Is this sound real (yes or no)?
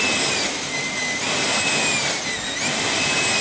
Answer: yes